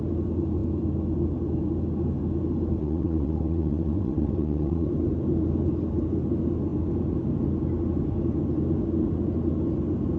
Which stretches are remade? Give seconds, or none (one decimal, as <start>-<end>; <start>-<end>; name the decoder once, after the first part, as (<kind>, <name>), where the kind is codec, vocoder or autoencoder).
2.8-4.9 (vocoder, WaveNeXt)